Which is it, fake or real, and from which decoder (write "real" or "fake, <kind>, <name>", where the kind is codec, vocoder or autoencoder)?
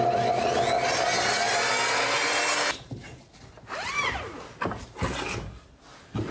real